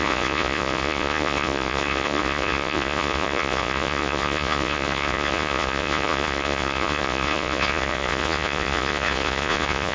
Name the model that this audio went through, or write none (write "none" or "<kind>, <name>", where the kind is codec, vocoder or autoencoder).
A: vocoder, Vocos